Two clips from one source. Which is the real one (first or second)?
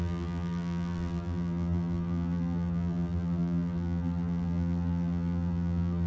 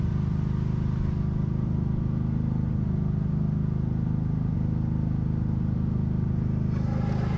second